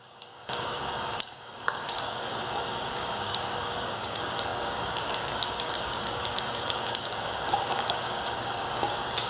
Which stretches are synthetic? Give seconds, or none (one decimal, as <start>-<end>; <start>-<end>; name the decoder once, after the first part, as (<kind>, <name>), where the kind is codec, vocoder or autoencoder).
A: 0.0-9.3 (codec, DAC)